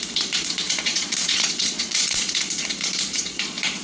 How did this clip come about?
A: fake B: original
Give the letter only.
A